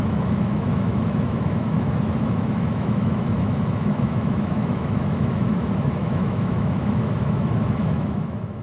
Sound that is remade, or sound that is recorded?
remade